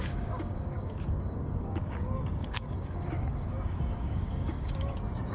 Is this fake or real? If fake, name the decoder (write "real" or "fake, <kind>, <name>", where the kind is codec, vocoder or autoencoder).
fake, codec, DAC